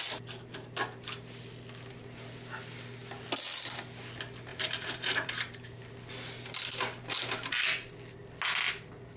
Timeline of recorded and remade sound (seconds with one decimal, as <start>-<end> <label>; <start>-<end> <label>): 0.0-4.5 recorded; 4.5-5.9 remade; 5.9-9.2 recorded